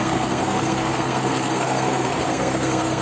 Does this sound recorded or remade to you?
remade